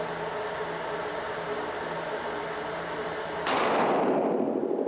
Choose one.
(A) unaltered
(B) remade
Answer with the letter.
A